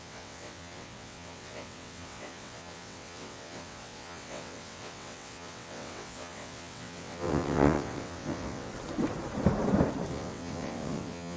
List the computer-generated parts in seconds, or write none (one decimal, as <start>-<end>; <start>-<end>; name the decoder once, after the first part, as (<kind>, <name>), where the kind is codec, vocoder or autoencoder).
0.0-8.7 (vocoder, WaveNeXt); 10.1-11.4